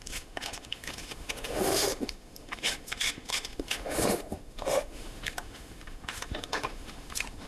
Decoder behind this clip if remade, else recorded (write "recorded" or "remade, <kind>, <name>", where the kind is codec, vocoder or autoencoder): remade, autoencoder, DAC-VAE